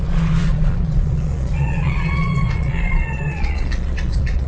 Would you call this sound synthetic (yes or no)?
yes